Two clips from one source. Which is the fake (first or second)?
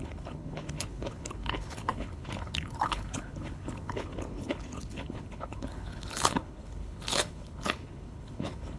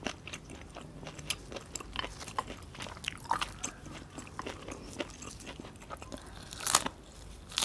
first